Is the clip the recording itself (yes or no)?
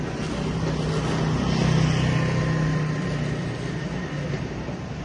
yes